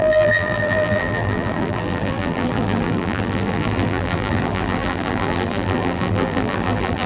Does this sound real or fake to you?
fake